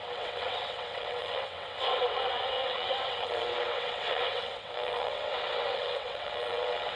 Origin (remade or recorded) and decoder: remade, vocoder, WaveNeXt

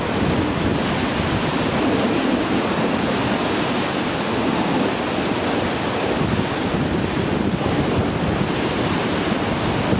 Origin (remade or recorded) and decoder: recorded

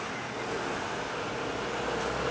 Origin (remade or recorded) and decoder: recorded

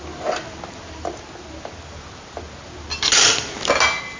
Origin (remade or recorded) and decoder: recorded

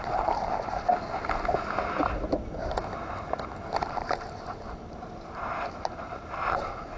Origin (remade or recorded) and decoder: recorded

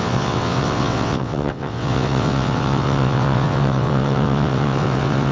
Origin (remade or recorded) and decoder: remade, vocoder, WaveNeXt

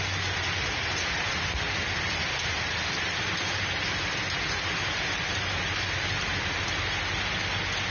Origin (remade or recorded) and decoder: recorded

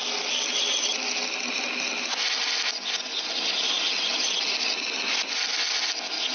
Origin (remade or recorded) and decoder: recorded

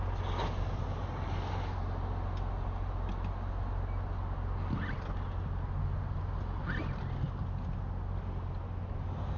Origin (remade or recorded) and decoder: recorded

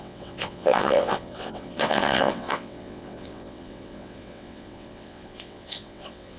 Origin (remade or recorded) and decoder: remade, vocoder, WaveNeXt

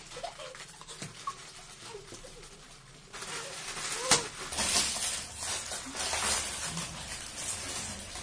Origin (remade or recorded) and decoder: recorded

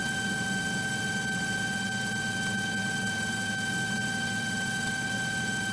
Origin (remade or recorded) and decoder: remade, vocoder, WaveNeXt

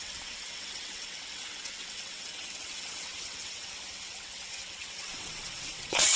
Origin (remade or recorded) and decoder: remade, vocoder, WaveNeXt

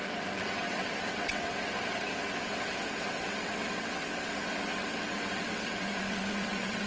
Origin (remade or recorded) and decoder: remade, vocoder, WaveNeXt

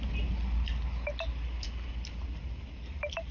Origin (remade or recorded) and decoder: recorded